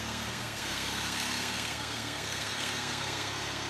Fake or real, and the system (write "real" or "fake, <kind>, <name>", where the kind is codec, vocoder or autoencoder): fake, codec, SNAC